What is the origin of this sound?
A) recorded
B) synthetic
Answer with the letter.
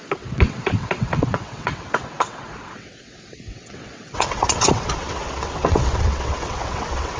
B